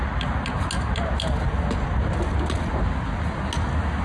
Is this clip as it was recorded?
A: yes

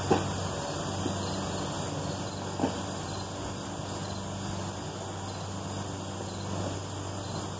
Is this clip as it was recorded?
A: yes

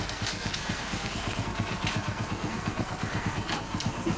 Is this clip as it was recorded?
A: no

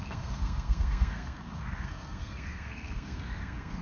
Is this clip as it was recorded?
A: no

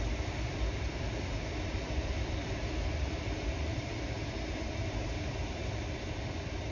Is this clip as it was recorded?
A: no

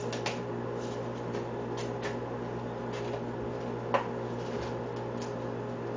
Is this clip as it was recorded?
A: yes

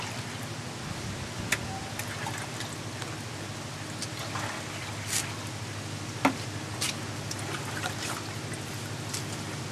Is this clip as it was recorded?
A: yes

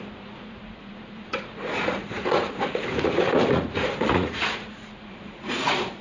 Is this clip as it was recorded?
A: no